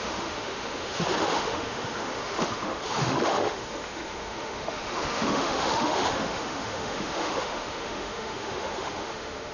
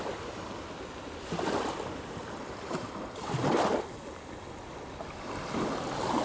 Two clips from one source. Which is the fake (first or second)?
first